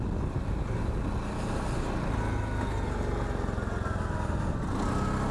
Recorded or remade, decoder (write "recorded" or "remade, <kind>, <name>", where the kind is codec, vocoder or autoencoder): recorded